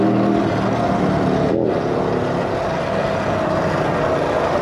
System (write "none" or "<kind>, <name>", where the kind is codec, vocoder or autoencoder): none